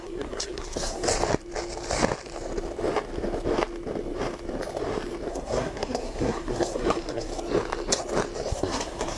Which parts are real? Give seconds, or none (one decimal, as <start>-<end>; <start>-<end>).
1.1-5.3; 7.3-8.5